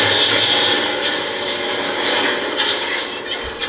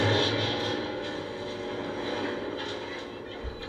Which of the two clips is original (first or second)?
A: second